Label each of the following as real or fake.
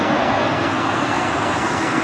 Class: fake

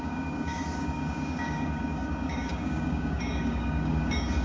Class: fake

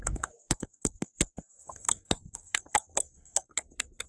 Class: fake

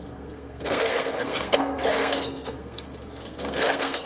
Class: fake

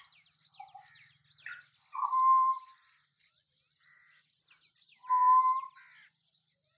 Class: real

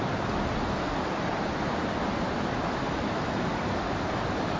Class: real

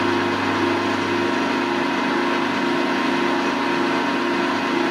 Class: real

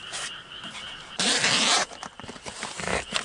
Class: fake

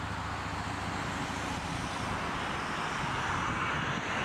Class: real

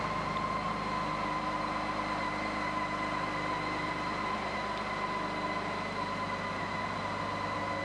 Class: real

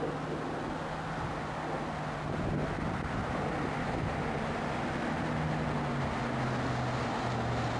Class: real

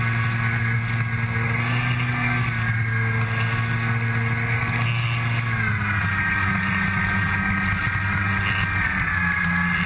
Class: real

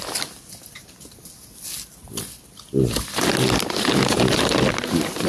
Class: real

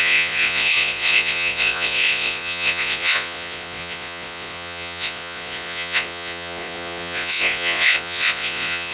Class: fake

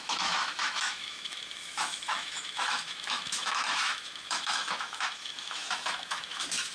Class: fake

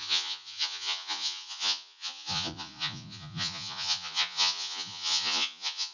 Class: fake